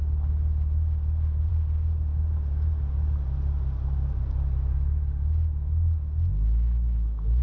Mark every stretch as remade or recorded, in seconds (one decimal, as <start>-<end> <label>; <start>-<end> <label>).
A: 0.0-7.4 recorded